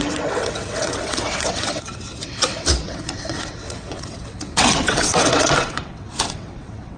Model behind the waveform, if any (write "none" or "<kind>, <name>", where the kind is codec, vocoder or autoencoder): vocoder, WaveNeXt